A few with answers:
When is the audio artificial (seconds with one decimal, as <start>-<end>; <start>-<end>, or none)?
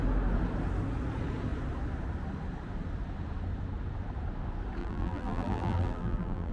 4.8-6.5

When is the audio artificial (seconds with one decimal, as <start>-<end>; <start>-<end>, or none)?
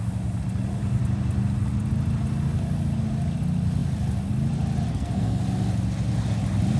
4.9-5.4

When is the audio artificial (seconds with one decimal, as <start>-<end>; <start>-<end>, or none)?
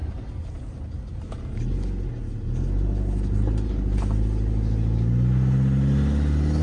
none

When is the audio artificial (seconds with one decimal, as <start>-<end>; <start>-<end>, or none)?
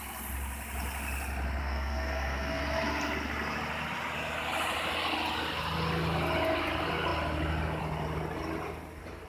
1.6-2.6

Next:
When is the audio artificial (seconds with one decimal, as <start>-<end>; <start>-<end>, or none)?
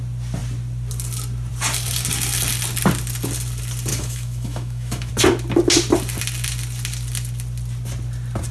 3.9-5.1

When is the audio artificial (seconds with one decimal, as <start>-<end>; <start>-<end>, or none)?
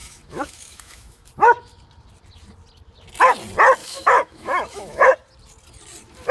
0.0-1.3; 3.8-5.1